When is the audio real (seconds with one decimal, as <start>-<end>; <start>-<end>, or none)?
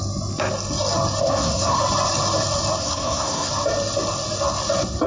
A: 0.0-1.2; 1.8-2.8; 3.5-5.1